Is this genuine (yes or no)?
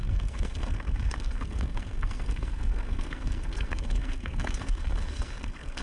no